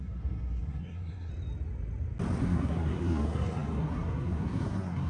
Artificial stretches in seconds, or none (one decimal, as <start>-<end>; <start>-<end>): 0.0-1.3; 2.4-5.1